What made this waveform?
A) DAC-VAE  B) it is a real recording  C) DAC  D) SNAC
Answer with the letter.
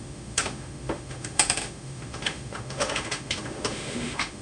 A